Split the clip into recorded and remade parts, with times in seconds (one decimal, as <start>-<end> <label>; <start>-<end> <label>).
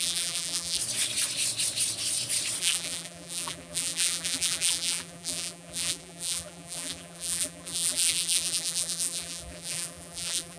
0.0-0.8 remade; 0.8-2.6 recorded; 2.6-10.6 remade